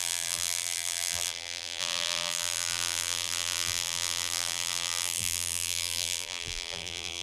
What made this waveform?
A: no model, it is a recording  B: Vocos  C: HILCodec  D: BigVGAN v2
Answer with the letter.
D